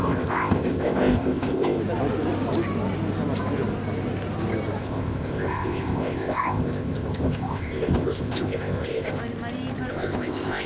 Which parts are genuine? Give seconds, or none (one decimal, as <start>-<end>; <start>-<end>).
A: 1.8-4.8; 9.2-9.9

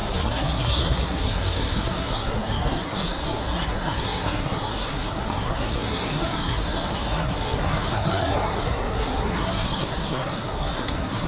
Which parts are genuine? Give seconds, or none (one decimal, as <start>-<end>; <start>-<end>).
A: none